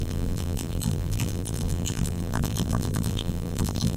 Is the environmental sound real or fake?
fake